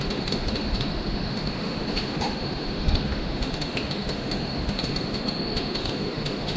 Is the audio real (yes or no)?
no